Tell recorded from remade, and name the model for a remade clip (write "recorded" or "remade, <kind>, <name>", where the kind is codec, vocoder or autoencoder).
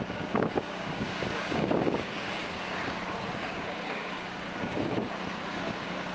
remade, codec, DAC